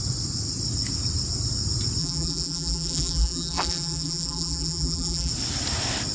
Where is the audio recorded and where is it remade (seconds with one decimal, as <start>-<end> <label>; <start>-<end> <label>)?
0.0-2.0 recorded; 2.0-5.3 remade; 5.3-6.1 recorded